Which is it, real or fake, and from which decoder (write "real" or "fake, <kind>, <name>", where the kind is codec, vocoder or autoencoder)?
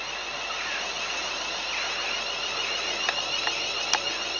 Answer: real